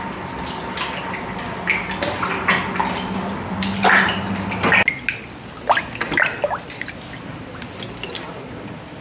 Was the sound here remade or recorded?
recorded